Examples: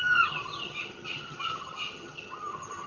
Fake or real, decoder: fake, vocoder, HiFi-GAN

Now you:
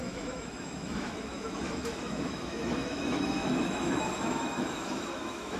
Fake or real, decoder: fake, autoencoder, DAC-VAE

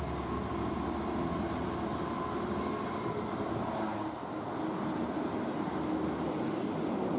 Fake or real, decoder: real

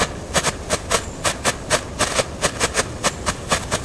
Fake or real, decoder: real